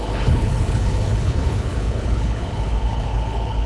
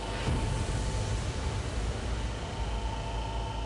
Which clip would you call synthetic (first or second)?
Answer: first